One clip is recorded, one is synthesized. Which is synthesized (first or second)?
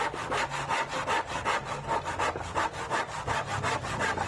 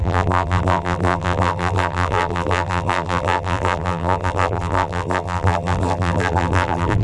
second